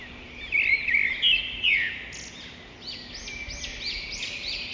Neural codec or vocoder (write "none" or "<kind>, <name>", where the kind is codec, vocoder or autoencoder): none